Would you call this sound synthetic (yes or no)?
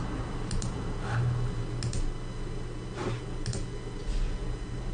no